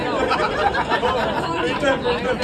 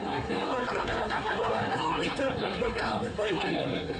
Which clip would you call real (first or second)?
first